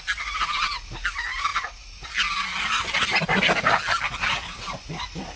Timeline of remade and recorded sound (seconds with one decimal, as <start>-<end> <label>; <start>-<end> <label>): 0.0-5.4 recorded